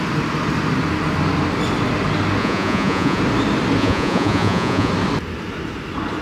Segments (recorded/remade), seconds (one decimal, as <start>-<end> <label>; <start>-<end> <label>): 0.0-2.4 recorded; 2.4-3.2 remade; 3.2-3.8 recorded; 3.8-4.9 remade; 4.9-6.2 recorded